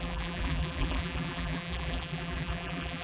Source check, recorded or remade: remade